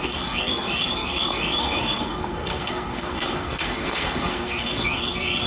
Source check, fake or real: fake